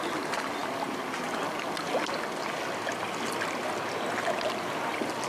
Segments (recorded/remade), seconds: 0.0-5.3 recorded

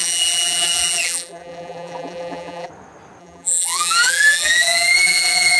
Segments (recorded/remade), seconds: 0.0-2.7 remade; 2.7-3.2 recorded; 3.2-5.6 remade

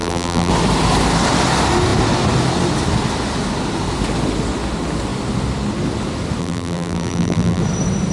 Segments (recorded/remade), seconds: 0.0-0.5 remade; 0.5-6.4 recorded; 6.4-7.6 remade; 7.6-8.1 recorded

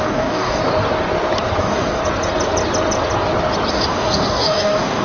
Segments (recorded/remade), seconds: 0.0-0.6 remade; 0.6-1.6 recorded; 1.6-2.0 remade; 2.0-3.7 recorded; 3.7-5.0 remade

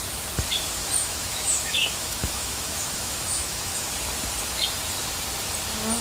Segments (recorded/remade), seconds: 0.0-1.0 recorded; 1.0-3.9 remade; 3.9-6.0 recorded